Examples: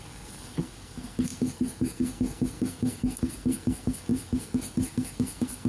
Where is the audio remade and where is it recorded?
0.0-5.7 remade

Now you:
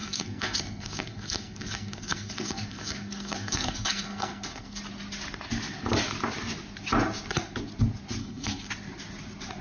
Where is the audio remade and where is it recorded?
0.0-4.8 remade; 4.8-8.2 recorded; 8.2-8.7 remade; 8.7-9.6 recorded

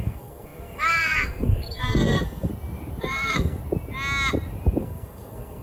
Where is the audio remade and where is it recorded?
0.0-2.5 remade; 2.5-3.0 recorded; 3.0-3.6 remade; 3.6-4.8 recorded; 4.8-5.6 remade

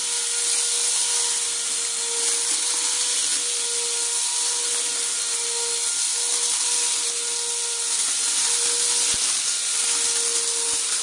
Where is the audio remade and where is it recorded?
0.0-11.0 recorded

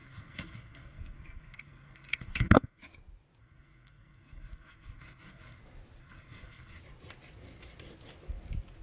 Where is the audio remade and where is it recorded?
0.0-2.8 remade; 2.8-3.4 recorded; 3.4-5.6 remade; 5.6-6.0 recorded; 6.0-6.8 remade; 6.8-8.8 recorded

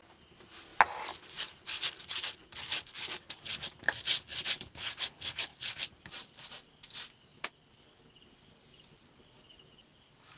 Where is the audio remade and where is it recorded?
0.0-10.4 recorded